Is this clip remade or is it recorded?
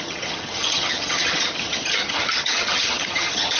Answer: remade